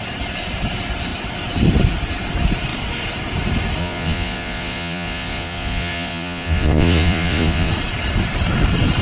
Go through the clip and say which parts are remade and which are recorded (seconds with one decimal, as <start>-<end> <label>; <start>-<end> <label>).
0.0-3.8 recorded; 3.8-7.7 remade; 7.7-9.0 recorded